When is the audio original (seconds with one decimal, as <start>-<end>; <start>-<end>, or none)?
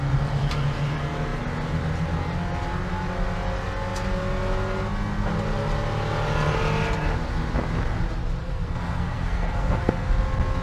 0.0-8.4; 10.1-10.6